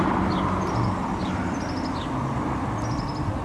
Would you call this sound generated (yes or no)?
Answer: no